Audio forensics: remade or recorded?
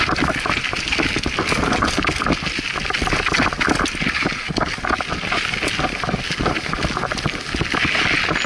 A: recorded